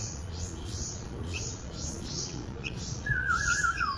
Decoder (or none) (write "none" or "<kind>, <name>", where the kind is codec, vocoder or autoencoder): vocoder, Vocos